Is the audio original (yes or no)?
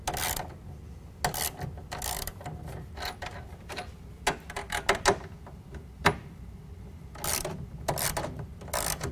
yes